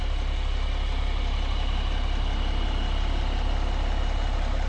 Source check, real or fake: real